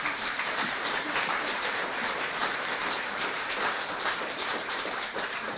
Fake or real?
fake